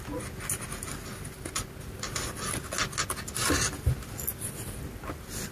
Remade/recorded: recorded